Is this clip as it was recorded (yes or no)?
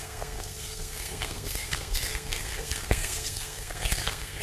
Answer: no